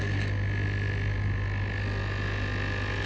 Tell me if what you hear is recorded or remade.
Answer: recorded